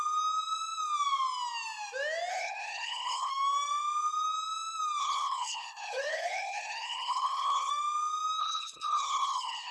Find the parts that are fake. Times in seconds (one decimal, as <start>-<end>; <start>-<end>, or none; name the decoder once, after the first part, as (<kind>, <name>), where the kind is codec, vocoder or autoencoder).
2.3-3.3 (codec, HILCodec); 5.0-7.7; 8.4-9.7